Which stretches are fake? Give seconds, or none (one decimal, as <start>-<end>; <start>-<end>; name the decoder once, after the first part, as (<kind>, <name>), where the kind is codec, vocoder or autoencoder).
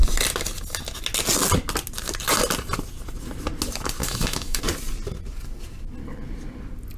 4.0-4.6 (autoencoder, DAC-VAE)